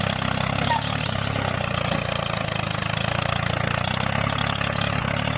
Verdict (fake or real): real